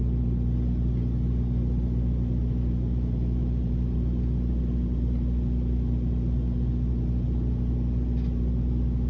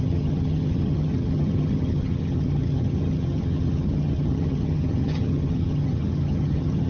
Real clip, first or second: first